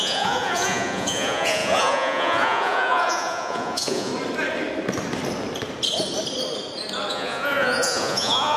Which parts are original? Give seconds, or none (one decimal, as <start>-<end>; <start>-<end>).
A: 4.1-7.1